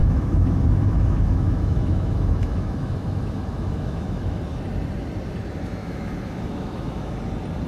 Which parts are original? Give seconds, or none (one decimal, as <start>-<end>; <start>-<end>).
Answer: 4.4-5.8; 7.2-7.7